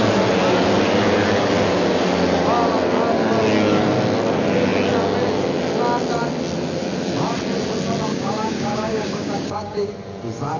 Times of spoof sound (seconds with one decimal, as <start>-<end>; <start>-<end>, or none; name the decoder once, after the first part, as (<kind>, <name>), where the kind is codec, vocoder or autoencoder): 8.1-9.9 (codec, DAC)